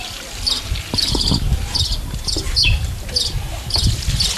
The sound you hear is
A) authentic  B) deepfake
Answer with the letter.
A